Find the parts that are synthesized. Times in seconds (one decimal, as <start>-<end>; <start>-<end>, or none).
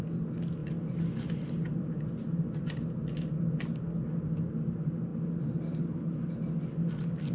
none